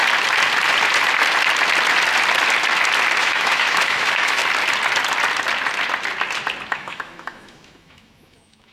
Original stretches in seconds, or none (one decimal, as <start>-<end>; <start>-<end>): 0.0-3.2; 4.4-6.7